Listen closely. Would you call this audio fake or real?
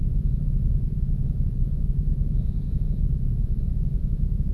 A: fake